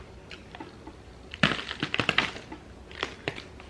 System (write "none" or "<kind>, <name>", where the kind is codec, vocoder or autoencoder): none